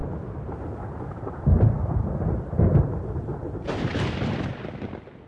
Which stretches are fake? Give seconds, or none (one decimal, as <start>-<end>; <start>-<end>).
none